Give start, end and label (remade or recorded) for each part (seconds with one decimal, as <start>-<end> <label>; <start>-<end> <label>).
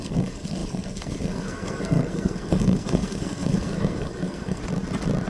0.0-4.6 remade; 4.6-5.3 recorded